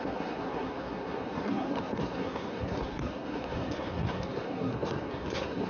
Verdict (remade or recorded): remade